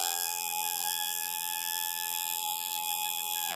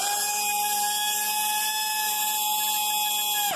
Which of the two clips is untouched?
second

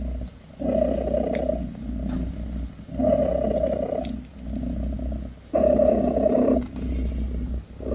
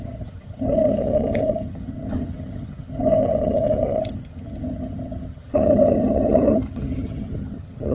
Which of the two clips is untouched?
first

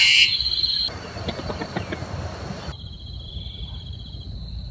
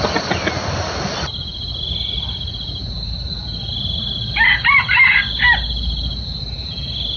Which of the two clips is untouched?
second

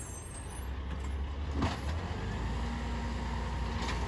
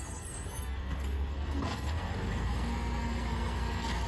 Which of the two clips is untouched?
first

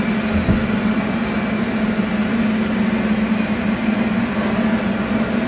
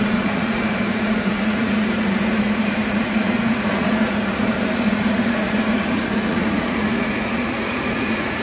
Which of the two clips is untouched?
first